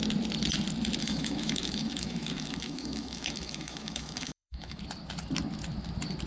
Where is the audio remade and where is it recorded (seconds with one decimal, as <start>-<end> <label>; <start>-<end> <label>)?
0.0-1.0 recorded; 1.0-4.8 remade; 4.8-6.3 recorded